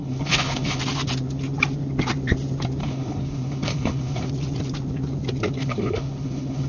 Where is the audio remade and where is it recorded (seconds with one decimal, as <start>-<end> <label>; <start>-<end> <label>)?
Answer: 0.0-0.8 remade; 0.8-2.8 recorded; 2.8-4.3 remade; 4.3-5.6 recorded; 5.6-6.7 remade

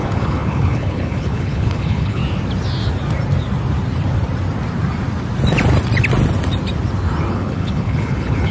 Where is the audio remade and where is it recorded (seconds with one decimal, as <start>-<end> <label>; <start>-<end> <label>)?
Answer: 0.0-2.2 remade; 2.2-7.3 recorded; 7.3-8.5 remade

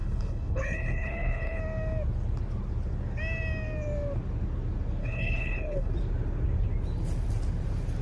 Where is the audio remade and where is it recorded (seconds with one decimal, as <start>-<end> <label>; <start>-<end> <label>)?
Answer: 0.0-1.6 remade; 1.6-5.0 recorded; 5.0-5.9 remade; 5.9-8.0 recorded

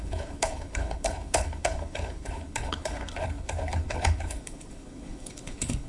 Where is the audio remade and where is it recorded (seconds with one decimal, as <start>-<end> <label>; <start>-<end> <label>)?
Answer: 0.0-5.9 remade

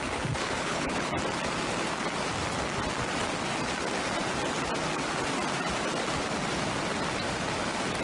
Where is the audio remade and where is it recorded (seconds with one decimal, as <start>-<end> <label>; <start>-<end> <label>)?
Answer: 0.0-0.4 recorded; 0.4-1.1 remade; 1.1-8.0 recorded